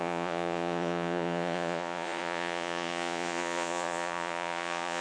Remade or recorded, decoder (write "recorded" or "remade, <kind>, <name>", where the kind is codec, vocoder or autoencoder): remade, vocoder, Vocos